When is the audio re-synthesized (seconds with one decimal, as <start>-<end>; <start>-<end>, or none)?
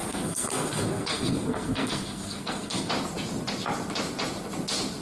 0.0-2.9